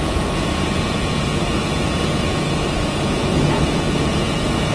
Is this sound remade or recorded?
remade